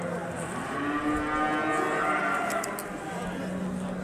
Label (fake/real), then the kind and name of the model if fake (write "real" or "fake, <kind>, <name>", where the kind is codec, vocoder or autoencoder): real